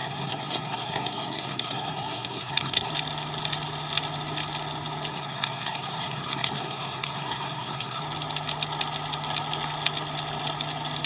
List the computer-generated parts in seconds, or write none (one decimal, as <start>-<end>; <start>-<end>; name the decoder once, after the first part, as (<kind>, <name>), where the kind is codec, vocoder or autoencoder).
0.0-2.9 (codec, SNAC); 5.1-8.0